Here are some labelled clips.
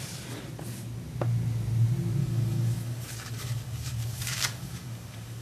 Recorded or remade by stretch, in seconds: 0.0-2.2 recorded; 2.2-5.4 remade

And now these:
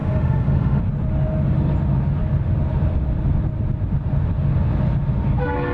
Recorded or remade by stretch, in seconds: 0.0-0.8 remade; 0.8-5.7 recorded

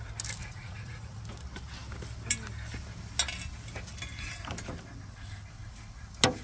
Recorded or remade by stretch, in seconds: 0.0-0.4 recorded; 0.4-1.2 remade; 1.2-6.4 recorded

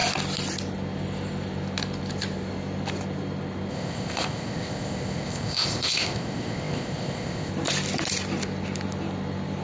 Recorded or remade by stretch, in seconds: 0.0-3.7 recorded; 3.7-7.5 remade; 7.5-9.6 recorded

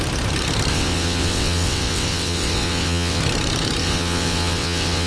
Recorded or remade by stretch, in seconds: 0.0-0.7 recorded; 0.7-3.2 remade; 3.2-3.8 recorded; 3.8-5.1 remade